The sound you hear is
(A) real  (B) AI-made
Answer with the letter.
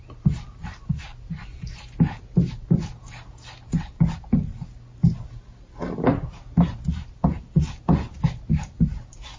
A